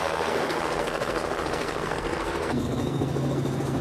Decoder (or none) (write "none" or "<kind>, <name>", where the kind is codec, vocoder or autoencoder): codec, SNAC